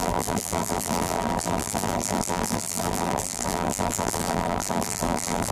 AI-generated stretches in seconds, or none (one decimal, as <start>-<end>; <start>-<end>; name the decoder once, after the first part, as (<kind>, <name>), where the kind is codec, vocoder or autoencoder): 0.0-5.5 (vocoder, BigVGAN v2)